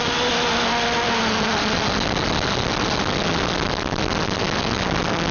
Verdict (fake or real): real